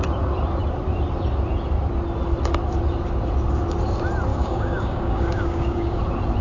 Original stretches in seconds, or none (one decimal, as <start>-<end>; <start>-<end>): 0.0-4.3; 6.0-6.4